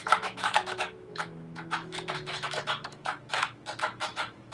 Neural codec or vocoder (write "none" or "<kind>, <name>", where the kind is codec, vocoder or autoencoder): autoencoder, DAC-VAE